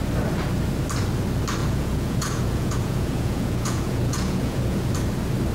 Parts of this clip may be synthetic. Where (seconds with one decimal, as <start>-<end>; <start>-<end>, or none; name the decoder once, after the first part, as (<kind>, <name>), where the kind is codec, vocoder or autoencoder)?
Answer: 1.6-4.9 (vocoder, Vocos)